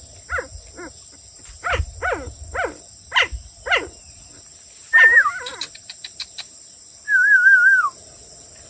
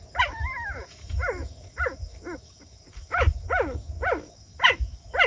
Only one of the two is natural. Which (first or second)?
first